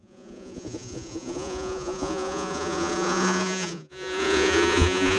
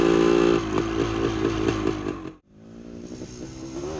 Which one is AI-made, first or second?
first